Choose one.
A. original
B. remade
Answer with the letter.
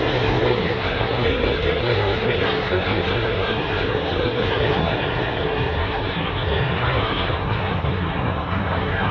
B